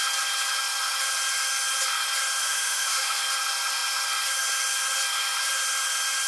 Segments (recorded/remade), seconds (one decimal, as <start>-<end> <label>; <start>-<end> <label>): 0.0-2.4 recorded; 2.4-3.2 remade; 3.2-6.3 recorded